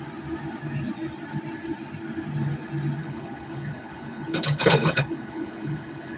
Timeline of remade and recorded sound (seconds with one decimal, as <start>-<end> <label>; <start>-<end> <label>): 0.0-3.0 recorded; 3.0-6.2 remade